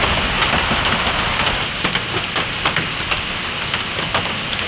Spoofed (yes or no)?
no